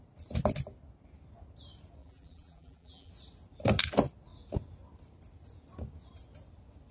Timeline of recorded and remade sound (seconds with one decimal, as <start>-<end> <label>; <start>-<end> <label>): 0.0-2.0 recorded; 2.0-3.1 remade; 3.1-6.9 recorded